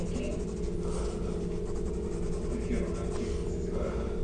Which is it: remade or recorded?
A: recorded